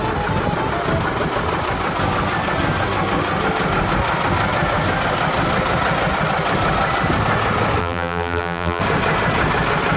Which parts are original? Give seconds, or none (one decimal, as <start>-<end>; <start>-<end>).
0.0-7.8; 8.8-10.0